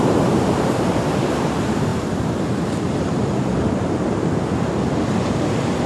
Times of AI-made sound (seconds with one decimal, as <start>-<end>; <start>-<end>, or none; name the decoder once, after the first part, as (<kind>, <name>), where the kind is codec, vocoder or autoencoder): 0.0-1.9 (vocoder, BigVGAN v2); 5.2-5.9